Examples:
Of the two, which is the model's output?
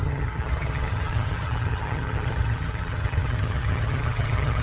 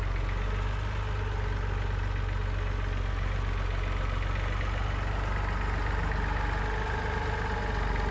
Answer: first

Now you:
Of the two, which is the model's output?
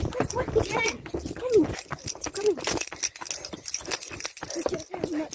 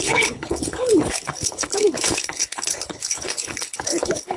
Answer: second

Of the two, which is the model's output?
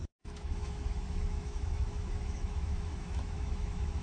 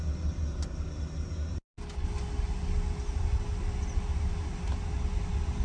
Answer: first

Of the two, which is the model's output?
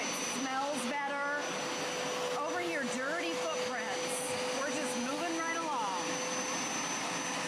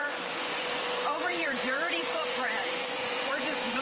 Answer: second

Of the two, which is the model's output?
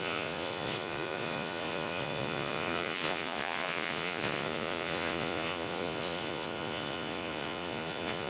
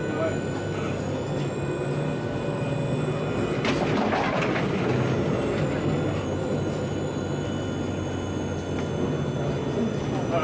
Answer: first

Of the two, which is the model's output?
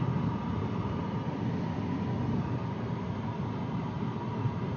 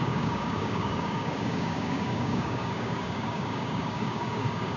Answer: second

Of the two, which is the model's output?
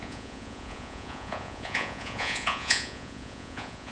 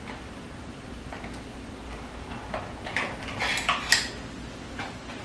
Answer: first